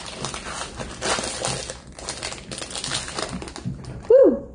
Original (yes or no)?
yes